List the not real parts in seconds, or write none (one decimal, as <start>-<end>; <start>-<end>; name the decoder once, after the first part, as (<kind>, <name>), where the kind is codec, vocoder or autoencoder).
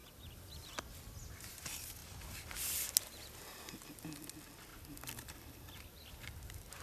0.0-0.7 (vocoder, BigVGAN v2); 4.7-6.1